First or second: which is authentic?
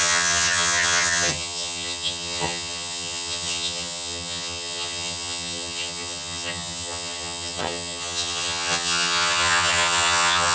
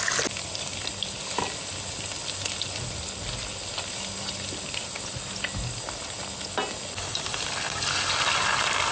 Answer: second